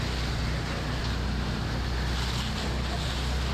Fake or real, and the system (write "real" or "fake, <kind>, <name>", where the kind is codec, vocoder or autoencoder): real